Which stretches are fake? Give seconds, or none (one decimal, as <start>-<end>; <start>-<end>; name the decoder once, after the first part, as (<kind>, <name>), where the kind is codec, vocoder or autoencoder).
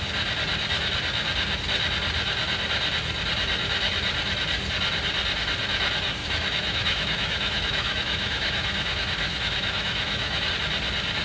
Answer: 6.2-10.5 (autoencoder, DAC-VAE)